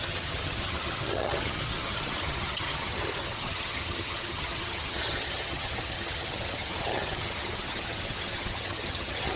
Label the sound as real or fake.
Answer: fake